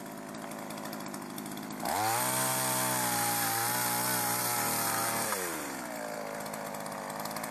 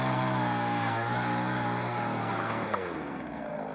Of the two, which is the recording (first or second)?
first